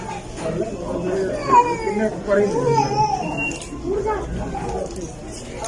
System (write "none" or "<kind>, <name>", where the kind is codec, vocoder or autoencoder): none